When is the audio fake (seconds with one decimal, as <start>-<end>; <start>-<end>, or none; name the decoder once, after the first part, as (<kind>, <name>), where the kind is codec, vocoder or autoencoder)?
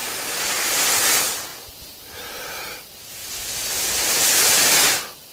0.0-0.9 (vocoder, BigVGAN v2); 1.5-2.2; 3.2-4.4